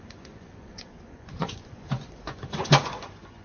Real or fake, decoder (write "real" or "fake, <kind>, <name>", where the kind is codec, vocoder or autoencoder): fake, vocoder, Vocos